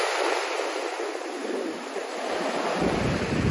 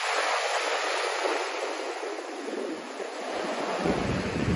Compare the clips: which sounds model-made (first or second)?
second